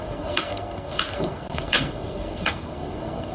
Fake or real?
fake